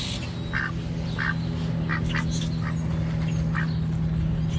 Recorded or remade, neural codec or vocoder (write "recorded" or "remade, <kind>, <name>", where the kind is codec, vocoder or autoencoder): recorded